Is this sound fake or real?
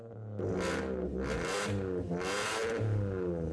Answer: real